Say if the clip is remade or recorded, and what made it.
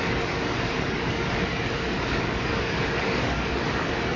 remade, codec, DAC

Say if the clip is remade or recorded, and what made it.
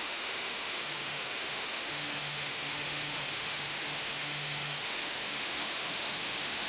remade, autoencoder, DAC-VAE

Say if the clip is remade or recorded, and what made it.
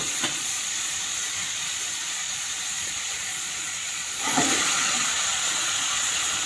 remade, vocoder, Vocos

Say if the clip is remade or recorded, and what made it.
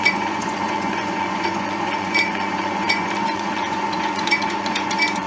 remade, vocoder, Vocos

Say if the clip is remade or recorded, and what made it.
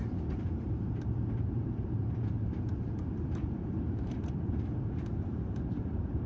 remade, vocoder, BigVGAN v2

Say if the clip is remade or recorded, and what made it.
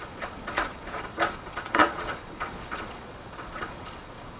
remade, vocoder, Vocos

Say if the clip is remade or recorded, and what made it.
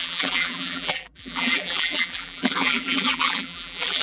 remade, vocoder, BigVGAN v2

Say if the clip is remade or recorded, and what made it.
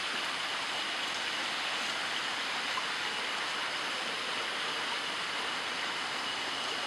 recorded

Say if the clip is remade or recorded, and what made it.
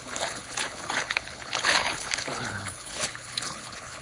remade, codec, HILCodec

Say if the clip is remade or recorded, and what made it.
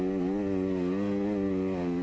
recorded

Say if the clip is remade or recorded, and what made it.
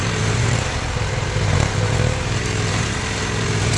remade, vocoder, BigVGAN v2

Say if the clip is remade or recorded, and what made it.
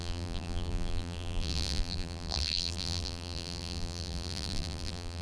remade, vocoder, BigVGAN v2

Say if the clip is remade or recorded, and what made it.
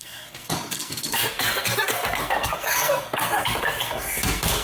remade, codec, SNAC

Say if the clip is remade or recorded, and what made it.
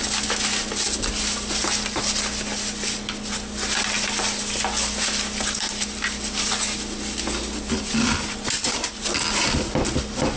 recorded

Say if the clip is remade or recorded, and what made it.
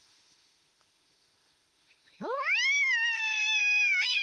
remade, autoencoder, DAC-VAE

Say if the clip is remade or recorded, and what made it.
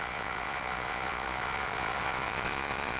remade, vocoder, Vocos